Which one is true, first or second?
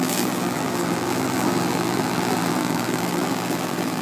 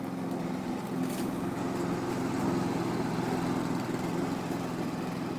second